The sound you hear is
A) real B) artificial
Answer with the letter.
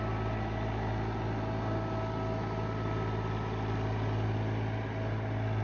A